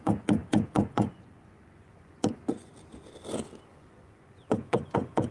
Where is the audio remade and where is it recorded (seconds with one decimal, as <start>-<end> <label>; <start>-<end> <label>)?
0.0-2.7 remade; 2.7-3.7 recorded; 3.7-5.3 remade